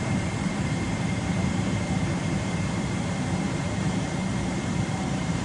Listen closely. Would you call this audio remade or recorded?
remade